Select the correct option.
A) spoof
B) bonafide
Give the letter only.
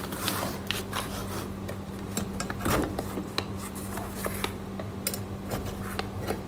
B